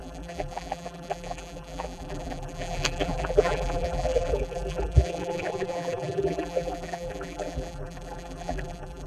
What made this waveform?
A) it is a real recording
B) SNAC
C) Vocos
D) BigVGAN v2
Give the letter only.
D